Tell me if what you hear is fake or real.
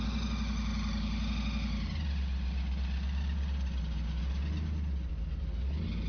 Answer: real